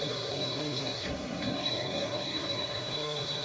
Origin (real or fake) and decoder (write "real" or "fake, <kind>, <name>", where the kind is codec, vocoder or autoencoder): fake, codec, SNAC